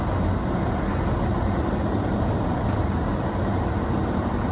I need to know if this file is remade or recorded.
recorded